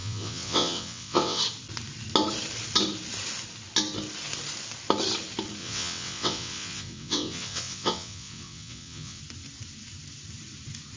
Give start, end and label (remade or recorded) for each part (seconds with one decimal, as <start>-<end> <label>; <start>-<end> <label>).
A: 0.0-1.4 remade; 1.4-5.6 recorded; 5.6-9.2 remade; 9.2-11.0 recorded